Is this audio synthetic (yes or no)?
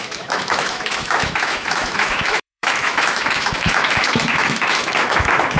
yes